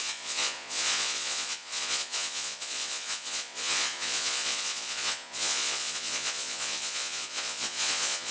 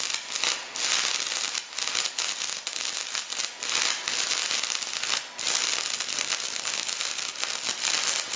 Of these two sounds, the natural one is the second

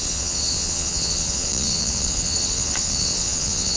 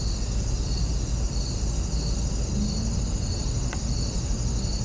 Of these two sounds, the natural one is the second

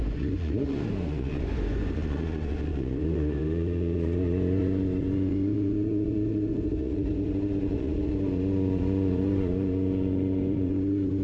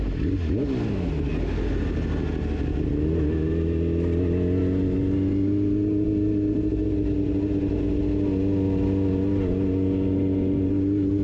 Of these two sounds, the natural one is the second